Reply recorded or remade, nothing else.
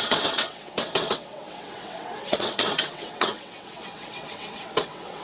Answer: remade